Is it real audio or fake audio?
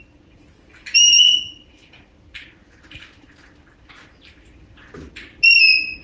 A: real